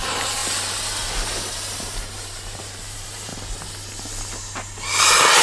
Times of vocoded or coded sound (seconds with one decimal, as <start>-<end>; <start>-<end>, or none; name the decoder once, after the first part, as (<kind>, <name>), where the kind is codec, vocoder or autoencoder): 0.0-0.4 (vocoder, BigVGAN v2); 1.5-3.3